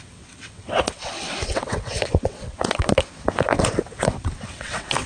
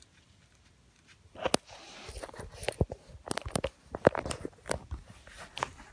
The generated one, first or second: first